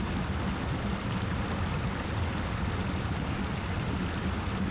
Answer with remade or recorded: recorded